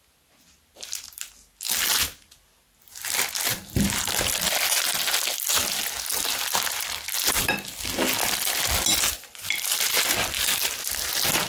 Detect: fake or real real